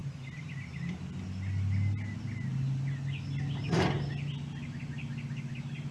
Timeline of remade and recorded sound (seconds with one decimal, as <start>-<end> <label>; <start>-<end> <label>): 0.0-5.9 recorded